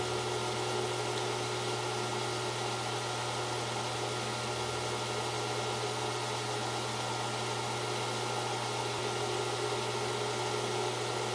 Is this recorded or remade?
recorded